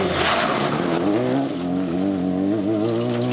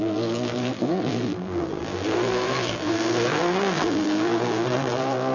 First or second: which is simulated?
second